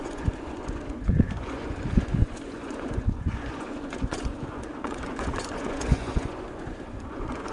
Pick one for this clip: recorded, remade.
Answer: remade